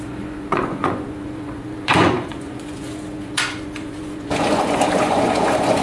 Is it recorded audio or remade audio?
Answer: remade